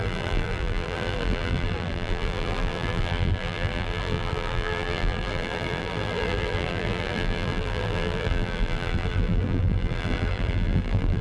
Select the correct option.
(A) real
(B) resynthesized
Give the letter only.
B